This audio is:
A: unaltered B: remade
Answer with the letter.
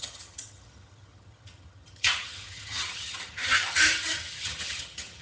B